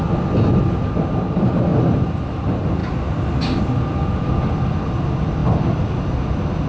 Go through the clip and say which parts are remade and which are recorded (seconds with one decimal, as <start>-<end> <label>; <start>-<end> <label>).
0.0-6.7 recorded